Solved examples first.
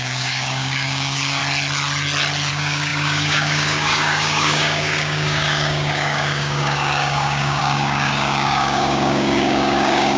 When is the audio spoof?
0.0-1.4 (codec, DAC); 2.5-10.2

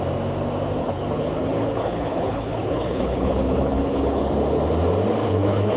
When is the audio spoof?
0.8-4.3 (codec, HILCodec); 5.2-5.8

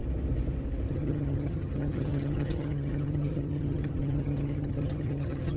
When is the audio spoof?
0.9-5.6 (vocoder, HiFi-GAN)

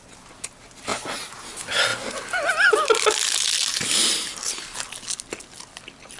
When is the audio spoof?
0.9-1.4 (vocoder, BigVGAN v2); 3.7-4.8

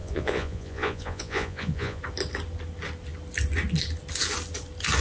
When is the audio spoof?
0.0-2.0 (vocoder, Vocos)

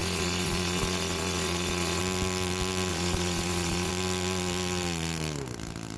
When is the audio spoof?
0.0-2.0 (vocoder, Vocos); 2.9-3.9

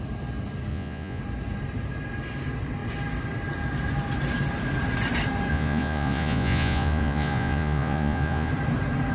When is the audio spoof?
0.7-1.2 (vocoder, Vocos); 5.5-8.5